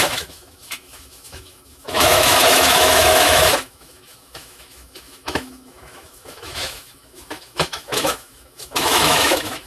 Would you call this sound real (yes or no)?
no